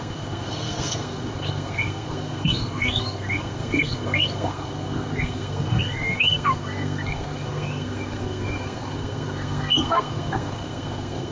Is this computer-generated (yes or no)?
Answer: yes